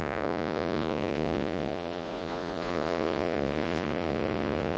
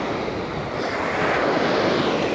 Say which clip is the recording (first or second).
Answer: second